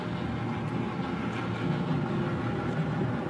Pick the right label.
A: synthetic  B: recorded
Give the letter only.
B